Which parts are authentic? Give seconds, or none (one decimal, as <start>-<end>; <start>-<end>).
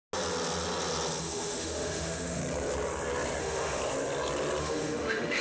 0.0-1.2; 2.4-3.4; 3.8-4.6